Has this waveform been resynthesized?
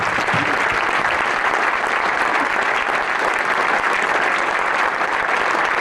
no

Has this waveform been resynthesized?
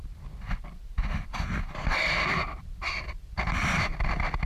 yes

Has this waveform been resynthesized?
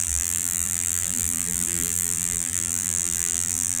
yes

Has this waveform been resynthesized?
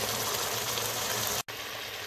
no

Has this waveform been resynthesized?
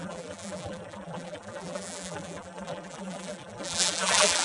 yes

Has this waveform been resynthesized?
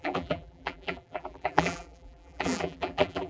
yes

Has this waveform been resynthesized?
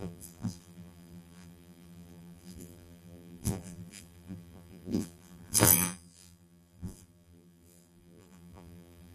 yes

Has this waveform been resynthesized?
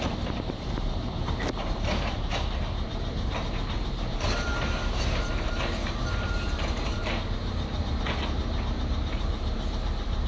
yes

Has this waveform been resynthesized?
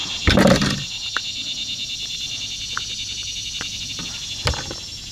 no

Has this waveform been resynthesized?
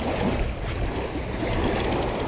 no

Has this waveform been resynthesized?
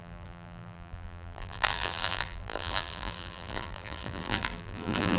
yes